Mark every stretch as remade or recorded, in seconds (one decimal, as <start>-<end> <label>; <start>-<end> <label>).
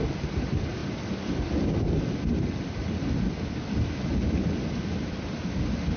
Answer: 0.0-6.0 recorded